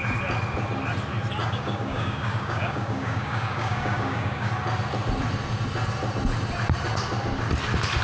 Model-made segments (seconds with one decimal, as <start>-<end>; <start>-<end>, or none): 1.4-4.5